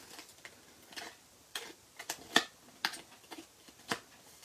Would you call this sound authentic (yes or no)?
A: yes